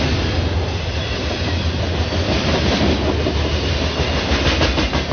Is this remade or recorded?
recorded